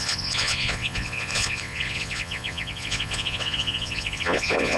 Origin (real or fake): fake